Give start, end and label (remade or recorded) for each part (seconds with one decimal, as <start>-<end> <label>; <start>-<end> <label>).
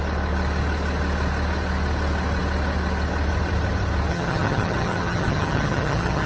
0.0-4.1 recorded; 4.1-6.3 remade